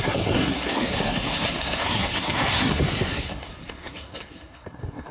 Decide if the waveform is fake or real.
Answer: fake